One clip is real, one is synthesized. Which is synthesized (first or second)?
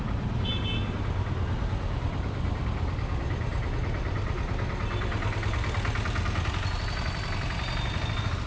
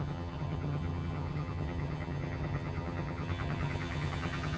second